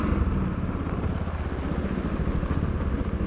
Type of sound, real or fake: real